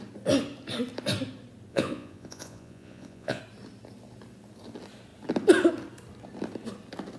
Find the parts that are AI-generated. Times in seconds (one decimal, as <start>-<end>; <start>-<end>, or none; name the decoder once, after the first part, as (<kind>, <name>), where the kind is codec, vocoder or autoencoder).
1.7-3.4 (vocoder, Vocos)